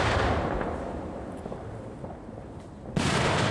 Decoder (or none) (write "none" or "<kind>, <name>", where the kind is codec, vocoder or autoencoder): none